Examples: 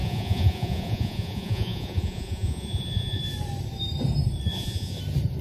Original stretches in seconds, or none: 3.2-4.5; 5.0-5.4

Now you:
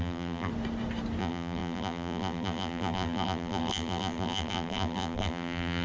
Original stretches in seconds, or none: 0.5-1.2

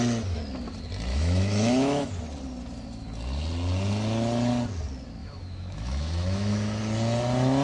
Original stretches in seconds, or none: 0.0-1.1; 2.1-5.2; 6.8-7.6

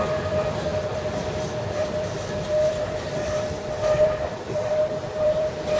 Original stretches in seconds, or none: none

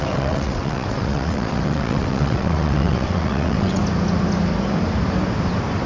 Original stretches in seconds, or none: 3.8-5.9